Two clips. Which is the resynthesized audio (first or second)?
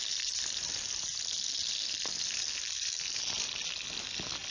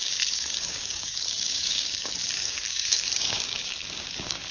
second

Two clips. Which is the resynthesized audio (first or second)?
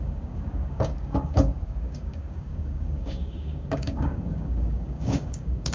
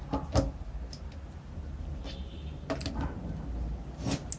first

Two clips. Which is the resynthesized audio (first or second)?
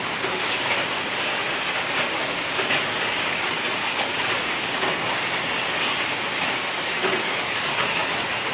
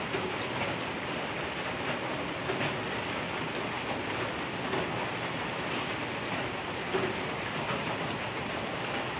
first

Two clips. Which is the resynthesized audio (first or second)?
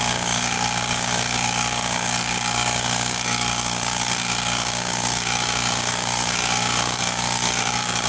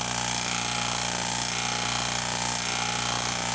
first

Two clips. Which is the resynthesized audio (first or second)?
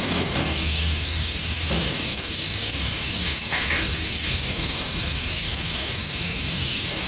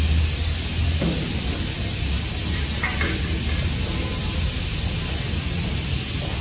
first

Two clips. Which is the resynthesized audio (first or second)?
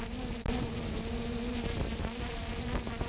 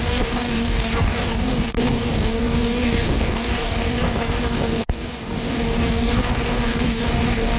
second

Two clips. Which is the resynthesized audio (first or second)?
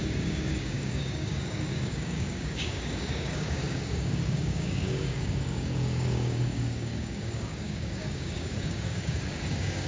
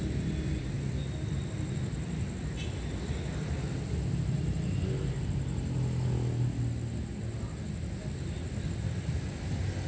first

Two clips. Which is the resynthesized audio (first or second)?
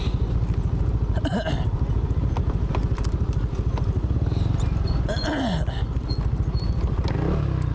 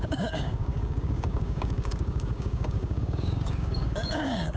second